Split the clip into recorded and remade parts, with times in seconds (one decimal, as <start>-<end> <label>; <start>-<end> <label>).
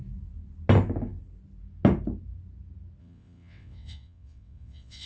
0.0-3.0 recorded; 3.0-5.1 remade